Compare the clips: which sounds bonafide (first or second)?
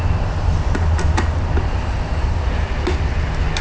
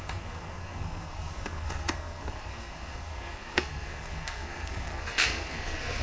first